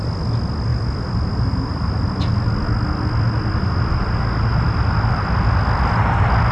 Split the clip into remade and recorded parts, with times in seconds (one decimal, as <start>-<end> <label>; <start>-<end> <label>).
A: 0.0-6.5 recorded